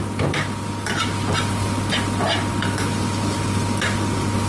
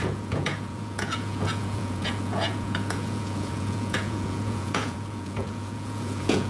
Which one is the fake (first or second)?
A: second